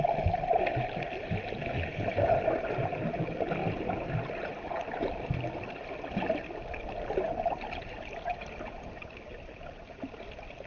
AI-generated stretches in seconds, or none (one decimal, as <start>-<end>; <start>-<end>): none